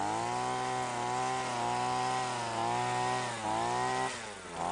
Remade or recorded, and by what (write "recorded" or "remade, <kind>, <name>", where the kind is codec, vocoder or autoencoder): recorded